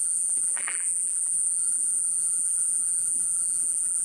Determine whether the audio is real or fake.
fake